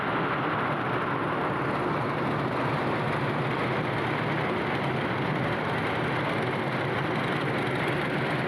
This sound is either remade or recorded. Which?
recorded